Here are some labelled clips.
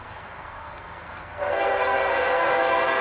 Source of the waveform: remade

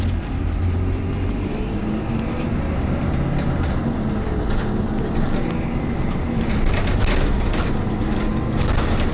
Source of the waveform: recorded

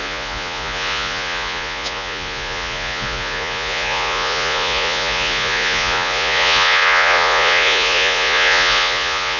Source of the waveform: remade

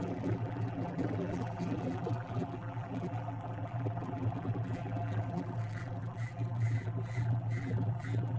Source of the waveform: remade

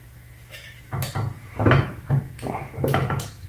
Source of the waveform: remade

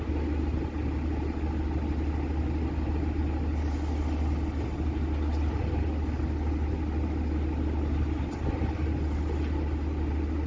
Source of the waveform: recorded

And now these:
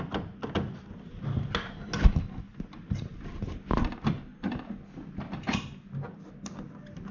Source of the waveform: recorded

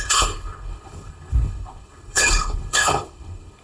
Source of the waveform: remade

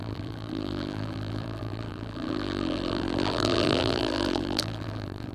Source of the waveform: remade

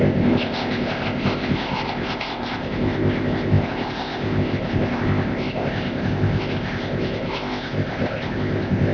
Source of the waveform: remade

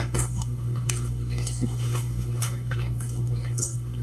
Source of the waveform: remade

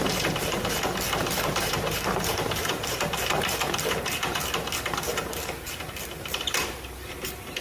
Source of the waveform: remade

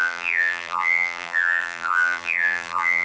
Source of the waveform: remade